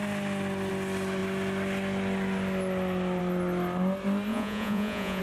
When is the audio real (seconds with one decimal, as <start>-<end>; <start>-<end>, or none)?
0.0-4.3